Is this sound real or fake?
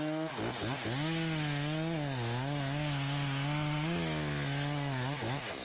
real